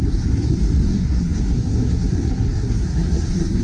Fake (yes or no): yes